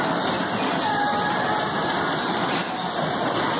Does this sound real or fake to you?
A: real